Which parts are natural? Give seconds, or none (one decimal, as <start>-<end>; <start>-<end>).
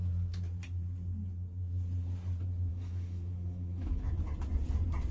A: 0.0-2.7; 4.1-5.1